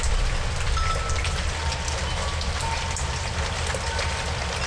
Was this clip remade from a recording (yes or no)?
no